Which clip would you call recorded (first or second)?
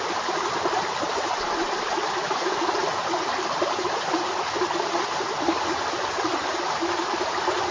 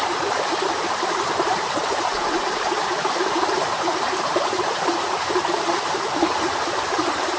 first